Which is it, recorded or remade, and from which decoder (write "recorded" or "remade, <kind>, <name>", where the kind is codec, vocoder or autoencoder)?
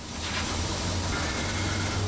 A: recorded